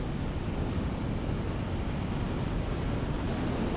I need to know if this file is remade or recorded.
recorded